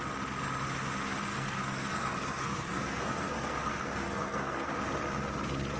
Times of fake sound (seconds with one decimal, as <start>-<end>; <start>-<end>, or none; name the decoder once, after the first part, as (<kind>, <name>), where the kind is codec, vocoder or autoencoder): 1.3-4.8 (codec, SNAC)